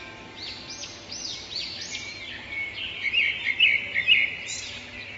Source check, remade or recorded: recorded